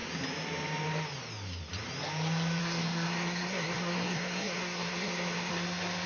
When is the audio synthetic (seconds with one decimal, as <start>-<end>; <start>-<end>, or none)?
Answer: 2.6-5.5